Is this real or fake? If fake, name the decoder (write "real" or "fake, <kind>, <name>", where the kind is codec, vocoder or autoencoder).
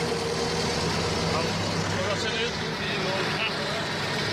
real